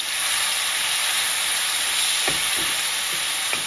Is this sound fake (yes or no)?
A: no